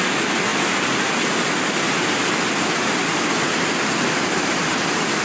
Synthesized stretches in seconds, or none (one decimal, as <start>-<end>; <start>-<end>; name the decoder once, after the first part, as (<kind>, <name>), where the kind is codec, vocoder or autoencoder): none